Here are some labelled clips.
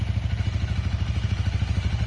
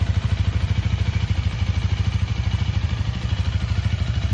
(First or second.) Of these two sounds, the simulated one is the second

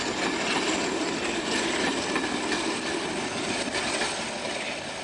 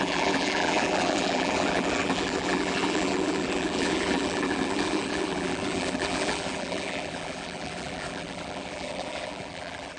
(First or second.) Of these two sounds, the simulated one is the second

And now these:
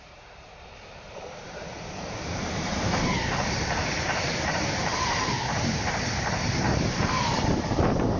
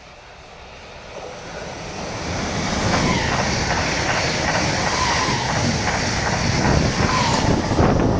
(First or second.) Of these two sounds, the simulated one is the first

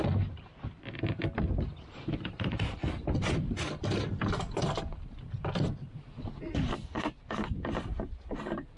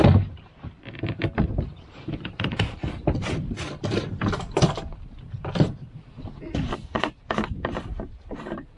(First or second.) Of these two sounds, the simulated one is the second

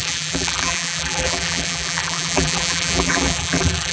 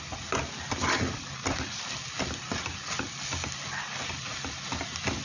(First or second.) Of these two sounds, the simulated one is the first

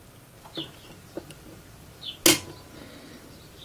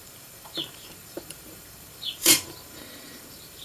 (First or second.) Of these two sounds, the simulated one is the second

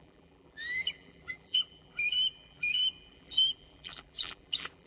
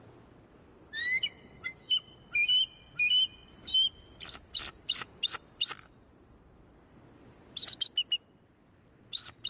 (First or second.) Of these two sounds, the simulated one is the first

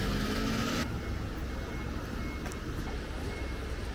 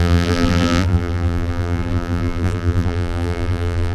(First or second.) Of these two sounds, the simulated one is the second